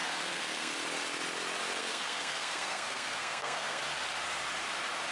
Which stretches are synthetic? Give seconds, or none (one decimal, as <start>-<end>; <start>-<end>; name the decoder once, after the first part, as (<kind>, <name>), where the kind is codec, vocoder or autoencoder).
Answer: 0.0-0.7 (codec, SNAC); 1.8-3.8